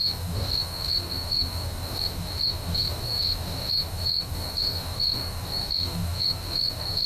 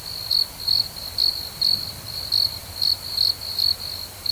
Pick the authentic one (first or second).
second